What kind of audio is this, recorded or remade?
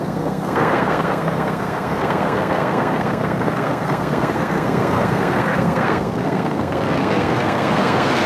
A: remade